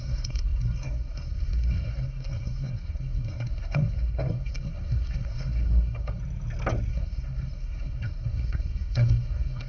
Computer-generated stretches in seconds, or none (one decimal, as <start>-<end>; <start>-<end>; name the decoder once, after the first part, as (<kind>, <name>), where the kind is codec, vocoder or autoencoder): 0.0-6.2 (codec, SNAC); 6.9-9.7

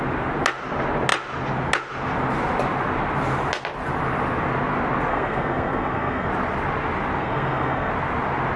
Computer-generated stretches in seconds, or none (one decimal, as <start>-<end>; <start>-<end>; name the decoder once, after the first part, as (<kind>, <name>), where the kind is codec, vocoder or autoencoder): 5.1-6.3 (codec, SNAC); 7.2-7.9

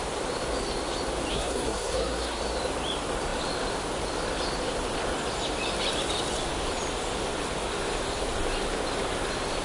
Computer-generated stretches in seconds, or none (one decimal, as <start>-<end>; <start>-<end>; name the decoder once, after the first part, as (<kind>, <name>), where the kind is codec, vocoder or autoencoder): 1.3-2.4 (codec, SNAC)

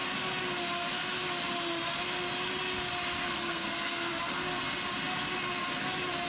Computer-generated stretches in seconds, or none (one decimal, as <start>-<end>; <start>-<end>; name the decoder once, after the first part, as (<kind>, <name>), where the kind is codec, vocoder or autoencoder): 3.2-4.1 (codec, SNAC)

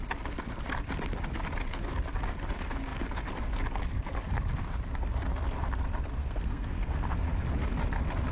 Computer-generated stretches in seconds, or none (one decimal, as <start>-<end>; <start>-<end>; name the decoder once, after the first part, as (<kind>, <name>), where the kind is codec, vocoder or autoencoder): 6.1-7.2 (codec, SNAC)

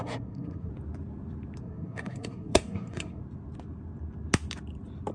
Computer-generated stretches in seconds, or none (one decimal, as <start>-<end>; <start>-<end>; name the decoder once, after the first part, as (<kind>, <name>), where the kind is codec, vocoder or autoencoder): 0.0-0.7 (codec, SNAC); 1.6-3.2

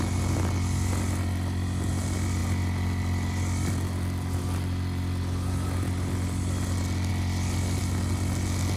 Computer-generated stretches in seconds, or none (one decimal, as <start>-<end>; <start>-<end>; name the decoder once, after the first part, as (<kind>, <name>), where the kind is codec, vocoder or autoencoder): none

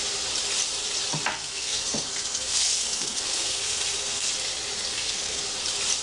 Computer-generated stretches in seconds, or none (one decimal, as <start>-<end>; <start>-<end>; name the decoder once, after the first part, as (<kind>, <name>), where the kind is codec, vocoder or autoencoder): 1.3-4.3 (codec, SNAC); 4.9-5.4